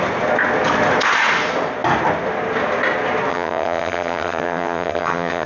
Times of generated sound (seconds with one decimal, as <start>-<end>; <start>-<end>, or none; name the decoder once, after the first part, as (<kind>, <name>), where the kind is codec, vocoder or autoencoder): 3.3-5.5 (vocoder, HiFi-GAN)